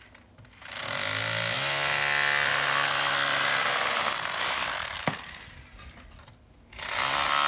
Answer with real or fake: real